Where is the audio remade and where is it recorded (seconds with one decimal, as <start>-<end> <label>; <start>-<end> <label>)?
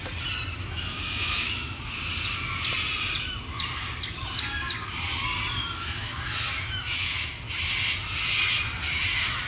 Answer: 0.0-0.6 recorded; 0.6-1.8 remade; 1.8-5.6 recorded; 5.6-7.4 remade; 7.4-9.5 recorded